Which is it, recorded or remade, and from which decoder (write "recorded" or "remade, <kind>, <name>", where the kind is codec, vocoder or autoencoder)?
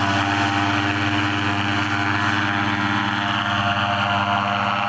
recorded